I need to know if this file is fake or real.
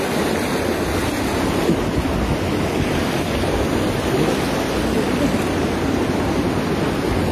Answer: real